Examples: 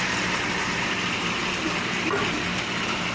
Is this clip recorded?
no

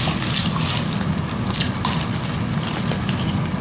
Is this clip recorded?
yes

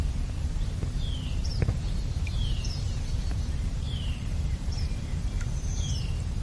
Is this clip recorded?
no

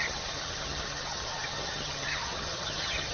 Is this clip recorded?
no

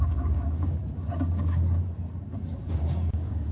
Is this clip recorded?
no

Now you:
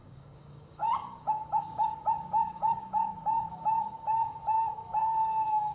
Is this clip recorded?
no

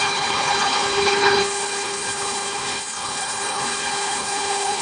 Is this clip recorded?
no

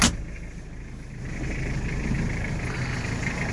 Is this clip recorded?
yes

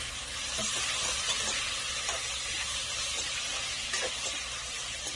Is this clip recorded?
yes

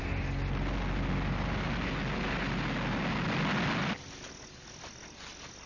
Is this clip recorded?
yes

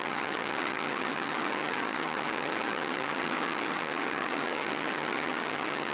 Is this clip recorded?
no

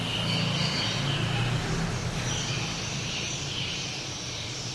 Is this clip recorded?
yes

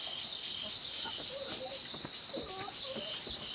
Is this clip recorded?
yes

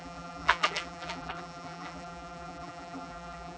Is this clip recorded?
no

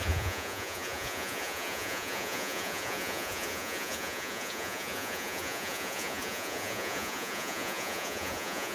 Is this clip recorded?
no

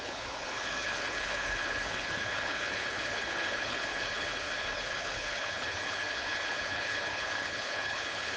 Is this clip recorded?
no